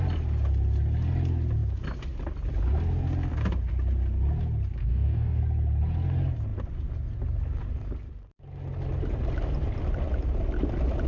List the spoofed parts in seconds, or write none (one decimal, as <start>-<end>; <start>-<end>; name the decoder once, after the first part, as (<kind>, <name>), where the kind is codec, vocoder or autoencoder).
4.8-5.4 (codec, DAC)